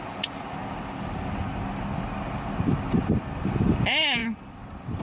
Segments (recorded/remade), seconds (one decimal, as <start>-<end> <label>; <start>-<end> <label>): 0.0-5.0 recorded